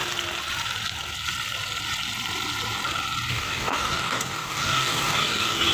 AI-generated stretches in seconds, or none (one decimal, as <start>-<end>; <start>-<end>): 3.3-5.7